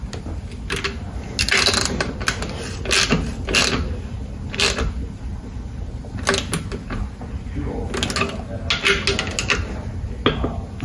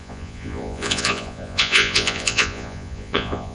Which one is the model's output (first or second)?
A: second